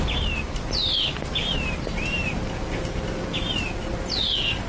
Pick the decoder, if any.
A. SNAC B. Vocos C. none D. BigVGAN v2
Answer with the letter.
C